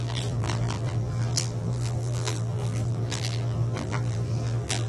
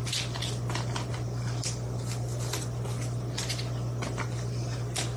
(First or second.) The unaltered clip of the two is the second